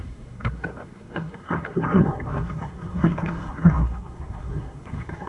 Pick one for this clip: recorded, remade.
remade